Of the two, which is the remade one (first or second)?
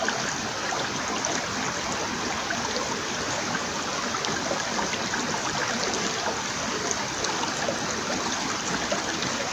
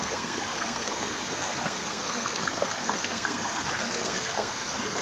second